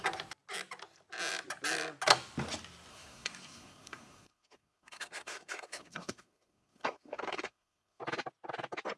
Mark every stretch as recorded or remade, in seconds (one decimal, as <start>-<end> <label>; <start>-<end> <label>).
0.0-2.9 recorded; 2.9-8.0 remade; 8.0-9.0 recorded